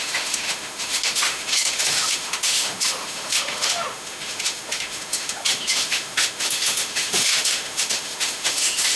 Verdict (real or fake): fake